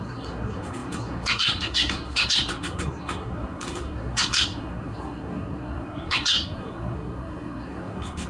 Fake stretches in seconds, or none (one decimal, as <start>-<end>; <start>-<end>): 0.0-8.3